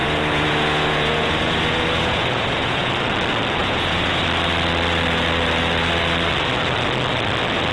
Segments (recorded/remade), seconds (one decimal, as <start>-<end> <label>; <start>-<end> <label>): 0.0-2.9 remade; 2.9-3.6 recorded; 3.6-4.2 remade; 4.2-7.7 recorded